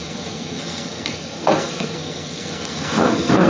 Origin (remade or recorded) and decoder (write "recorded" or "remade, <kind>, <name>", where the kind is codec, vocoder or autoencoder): remade, codec, SNAC